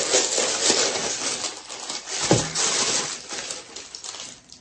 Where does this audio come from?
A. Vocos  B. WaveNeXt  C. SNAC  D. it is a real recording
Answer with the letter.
D